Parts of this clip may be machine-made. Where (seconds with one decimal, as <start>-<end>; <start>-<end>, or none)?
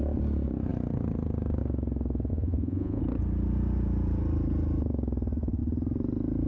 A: 2.3-3.0